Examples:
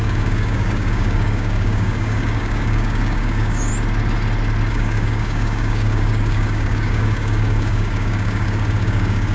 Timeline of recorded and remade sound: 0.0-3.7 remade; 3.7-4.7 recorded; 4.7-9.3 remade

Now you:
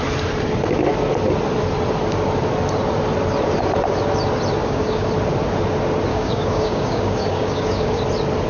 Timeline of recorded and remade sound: 0.0-4.6 recorded; 4.6-5.1 remade; 5.1-6.1 recorded; 6.1-8.0 remade; 8.0-8.5 recorded

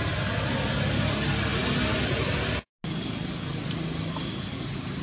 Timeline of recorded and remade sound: 0.0-5.0 recorded

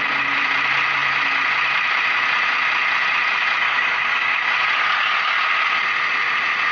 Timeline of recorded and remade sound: 0.0-3.6 recorded; 3.6-4.5 remade; 4.5-6.7 recorded

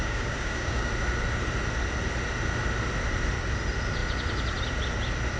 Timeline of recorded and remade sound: 0.0-0.9 remade; 0.9-5.4 recorded

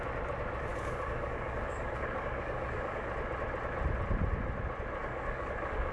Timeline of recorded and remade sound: 0.0-0.7 recorded; 0.7-3.1 remade; 3.1-5.0 recorded; 5.0-5.9 remade

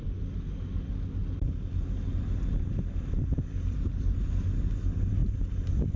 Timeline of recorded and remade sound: 0.0-6.0 recorded